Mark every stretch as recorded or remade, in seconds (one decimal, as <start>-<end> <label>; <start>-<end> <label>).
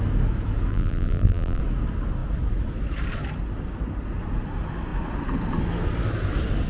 0.0-0.7 recorded; 0.7-1.6 remade; 1.6-6.7 recorded